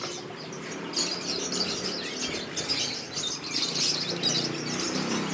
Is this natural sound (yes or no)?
yes